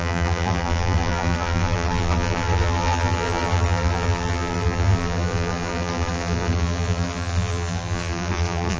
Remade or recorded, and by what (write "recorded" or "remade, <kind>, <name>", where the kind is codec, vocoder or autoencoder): remade, vocoder, BigVGAN v2